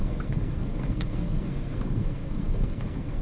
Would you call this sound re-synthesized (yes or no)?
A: yes